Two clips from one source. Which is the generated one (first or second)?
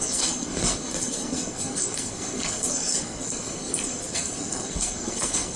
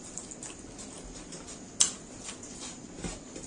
first